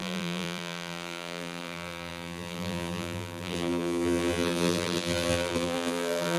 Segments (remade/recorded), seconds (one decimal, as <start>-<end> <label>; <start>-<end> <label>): 0.0-6.4 remade